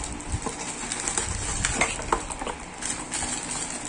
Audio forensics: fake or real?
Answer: real